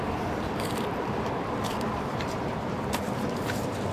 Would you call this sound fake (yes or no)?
yes